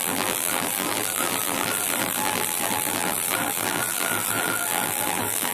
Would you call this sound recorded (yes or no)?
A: no